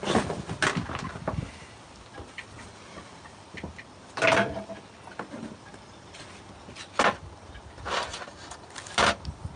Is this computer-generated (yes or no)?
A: no